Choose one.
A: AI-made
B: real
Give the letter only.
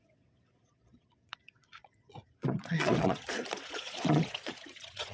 A